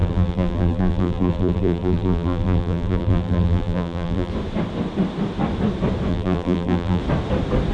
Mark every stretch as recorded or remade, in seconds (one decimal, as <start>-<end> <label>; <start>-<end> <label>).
0.0-4.3 remade; 4.3-6.1 recorded; 6.1-7.0 remade; 7.0-7.7 recorded